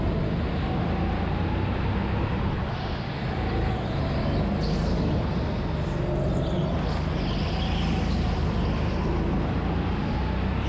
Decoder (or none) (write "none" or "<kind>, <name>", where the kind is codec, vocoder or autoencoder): none